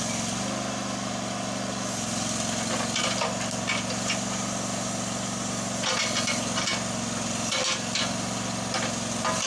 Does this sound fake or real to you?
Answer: real